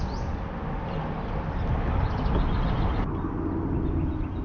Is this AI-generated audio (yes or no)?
no